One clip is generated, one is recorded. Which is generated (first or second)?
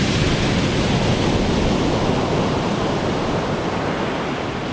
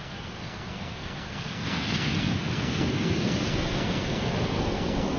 second